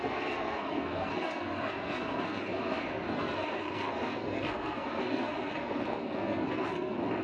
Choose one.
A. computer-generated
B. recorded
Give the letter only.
A